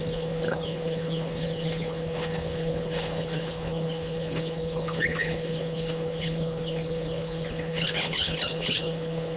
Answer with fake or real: fake